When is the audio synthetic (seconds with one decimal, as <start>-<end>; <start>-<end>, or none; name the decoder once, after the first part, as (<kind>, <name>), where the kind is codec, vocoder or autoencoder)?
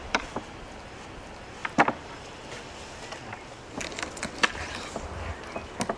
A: 0.0-0.8 (vocoder, BigVGAN v2)